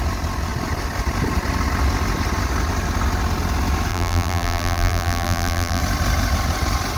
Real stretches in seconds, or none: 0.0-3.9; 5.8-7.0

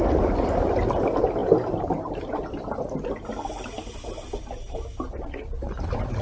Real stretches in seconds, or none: 0.0-6.2

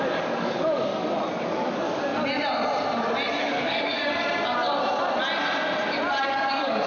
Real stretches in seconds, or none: 0.9-1.4; 2.1-3.4; 4.2-6.2

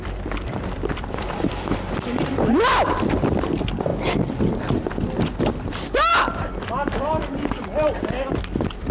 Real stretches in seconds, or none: 3.9-5.4; 6.1-8.3

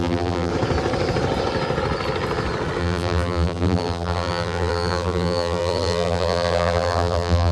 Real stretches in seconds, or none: 0.5-2.8

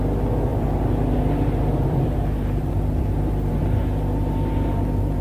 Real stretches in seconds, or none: 0.0-0.5; 3.5-5.2